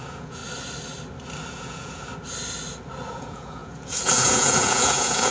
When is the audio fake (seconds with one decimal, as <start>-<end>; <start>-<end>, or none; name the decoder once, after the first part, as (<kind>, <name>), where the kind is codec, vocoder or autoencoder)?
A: 0.0-0.4 (vocoder, Vocos); 1.5-2.1; 3.1-5.3